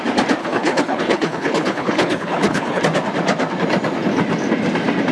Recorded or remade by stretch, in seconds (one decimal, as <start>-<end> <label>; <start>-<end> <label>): 0.0-0.4 recorded; 0.4-2.8 remade; 2.8-5.1 recorded